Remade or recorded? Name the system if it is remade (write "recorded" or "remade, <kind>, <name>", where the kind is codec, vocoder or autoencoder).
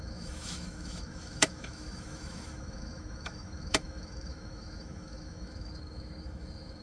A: remade, autoencoder, DAC-VAE